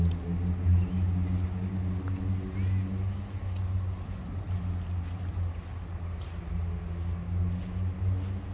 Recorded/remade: recorded